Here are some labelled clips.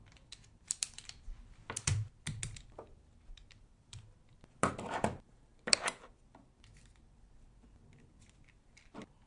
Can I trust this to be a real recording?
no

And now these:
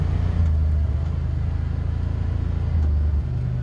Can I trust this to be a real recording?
yes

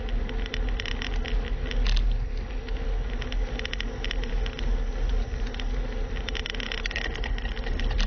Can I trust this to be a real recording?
yes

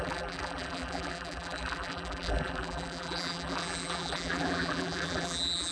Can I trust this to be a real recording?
no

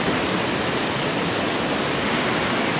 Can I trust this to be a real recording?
yes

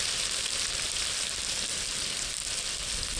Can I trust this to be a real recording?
yes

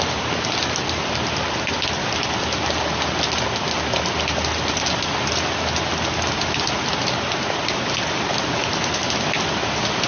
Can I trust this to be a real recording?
yes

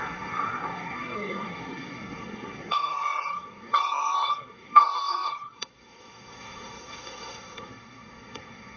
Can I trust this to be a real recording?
no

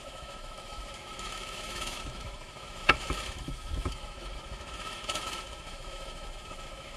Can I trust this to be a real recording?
no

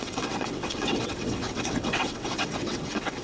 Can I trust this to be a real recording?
no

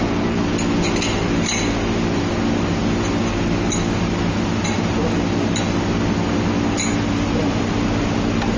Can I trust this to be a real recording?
yes